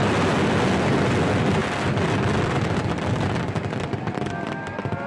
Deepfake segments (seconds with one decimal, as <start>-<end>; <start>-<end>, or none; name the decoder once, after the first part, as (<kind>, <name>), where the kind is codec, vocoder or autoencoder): none